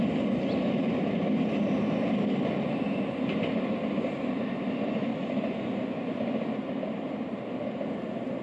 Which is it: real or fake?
real